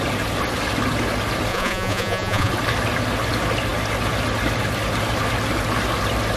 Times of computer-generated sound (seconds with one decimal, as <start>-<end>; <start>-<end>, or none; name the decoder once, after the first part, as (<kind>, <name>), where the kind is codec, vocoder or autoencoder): 1.5-2.5 (vocoder, Vocos)